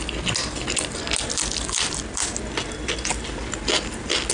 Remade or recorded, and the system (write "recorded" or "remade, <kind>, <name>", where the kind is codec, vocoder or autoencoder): recorded